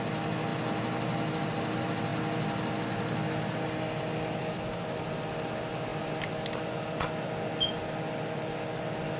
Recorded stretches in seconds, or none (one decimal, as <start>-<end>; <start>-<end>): 0.0-9.2